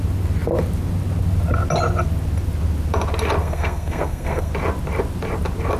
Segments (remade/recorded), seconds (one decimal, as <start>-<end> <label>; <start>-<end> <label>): 0.0-3.4 recorded; 3.4-4.5 remade; 4.5-5.8 recorded